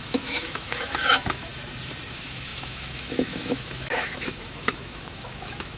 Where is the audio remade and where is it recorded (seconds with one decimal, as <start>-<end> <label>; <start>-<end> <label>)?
0.0-1.5 remade; 1.5-2.1 recorded; 2.1-5.8 remade